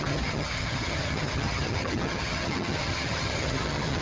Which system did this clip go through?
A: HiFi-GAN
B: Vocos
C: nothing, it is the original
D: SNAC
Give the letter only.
A